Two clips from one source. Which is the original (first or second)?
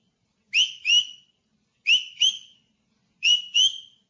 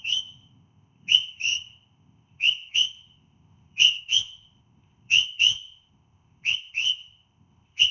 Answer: first